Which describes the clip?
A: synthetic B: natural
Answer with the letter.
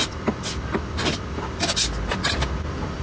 B